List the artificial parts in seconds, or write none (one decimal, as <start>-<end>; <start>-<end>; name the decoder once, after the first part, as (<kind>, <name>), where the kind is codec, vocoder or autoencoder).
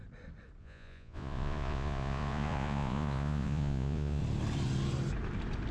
0.6-4.2 (vocoder, Vocos)